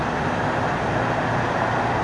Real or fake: real